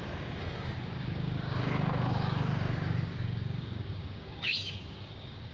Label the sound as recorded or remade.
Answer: remade